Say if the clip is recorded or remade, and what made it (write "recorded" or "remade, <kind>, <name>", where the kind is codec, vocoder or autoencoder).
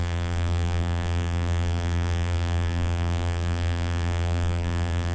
remade, vocoder, BigVGAN v2